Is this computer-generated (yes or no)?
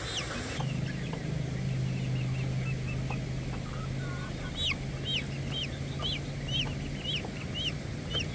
no